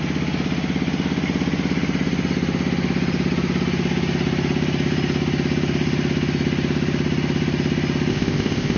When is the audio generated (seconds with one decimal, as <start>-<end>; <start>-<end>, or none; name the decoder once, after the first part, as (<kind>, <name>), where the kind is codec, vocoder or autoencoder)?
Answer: 8.1-8.8 (codec, ZipCodec)